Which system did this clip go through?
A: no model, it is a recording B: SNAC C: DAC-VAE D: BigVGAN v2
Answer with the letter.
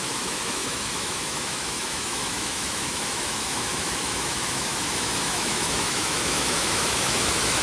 C